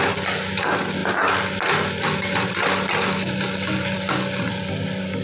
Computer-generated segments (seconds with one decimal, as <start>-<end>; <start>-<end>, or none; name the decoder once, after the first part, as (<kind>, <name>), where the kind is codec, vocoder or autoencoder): none